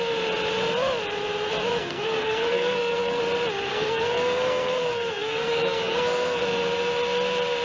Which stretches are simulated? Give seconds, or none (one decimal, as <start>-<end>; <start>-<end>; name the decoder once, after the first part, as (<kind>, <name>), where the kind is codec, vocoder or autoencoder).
1.7-3.2 (codec, SNAC); 3.7-6.4